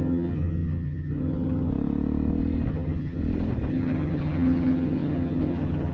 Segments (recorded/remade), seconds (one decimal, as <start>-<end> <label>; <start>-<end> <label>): 0.0-1.7 remade; 1.7-2.7 recorded; 2.7-3.2 remade; 3.2-3.7 recorded; 3.7-5.9 remade